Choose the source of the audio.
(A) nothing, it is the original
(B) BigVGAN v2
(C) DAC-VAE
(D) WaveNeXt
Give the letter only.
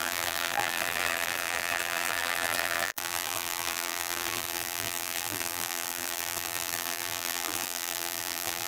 B